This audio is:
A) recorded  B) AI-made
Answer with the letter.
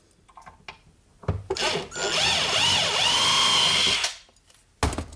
A